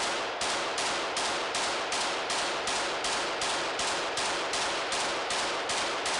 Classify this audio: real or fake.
real